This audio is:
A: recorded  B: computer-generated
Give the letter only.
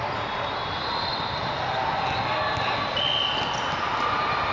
A